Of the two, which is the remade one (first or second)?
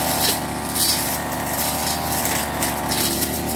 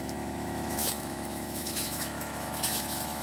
second